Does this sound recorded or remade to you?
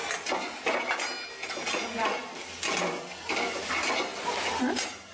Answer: recorded